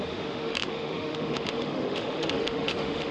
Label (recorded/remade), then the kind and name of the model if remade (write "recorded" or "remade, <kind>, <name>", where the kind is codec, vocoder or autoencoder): remade, autoencoder, DAC-VAE